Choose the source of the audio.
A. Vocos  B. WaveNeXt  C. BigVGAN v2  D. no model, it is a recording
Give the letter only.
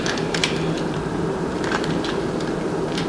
C